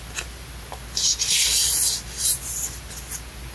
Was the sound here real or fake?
real